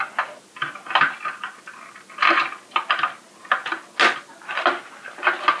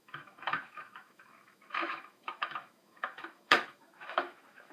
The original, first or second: first